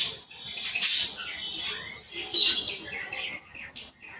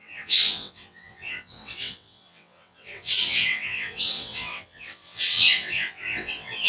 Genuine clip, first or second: first